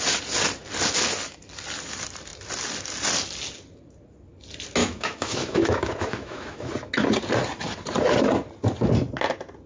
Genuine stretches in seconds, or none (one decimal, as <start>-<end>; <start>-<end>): 0.0-4.8; 6.7-9.7